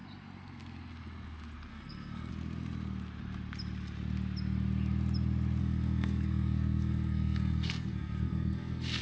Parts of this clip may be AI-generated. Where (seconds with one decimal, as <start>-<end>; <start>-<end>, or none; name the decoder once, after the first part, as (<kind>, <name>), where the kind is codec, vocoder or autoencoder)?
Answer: 1.7-2.3 (codec, SNAC); 5.6-9.0